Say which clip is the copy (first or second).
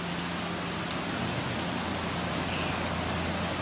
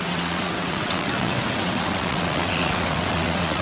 second